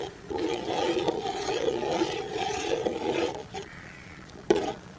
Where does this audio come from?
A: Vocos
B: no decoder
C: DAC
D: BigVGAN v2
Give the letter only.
A